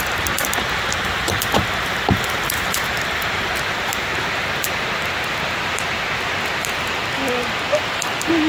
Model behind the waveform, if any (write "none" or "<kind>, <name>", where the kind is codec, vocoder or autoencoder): none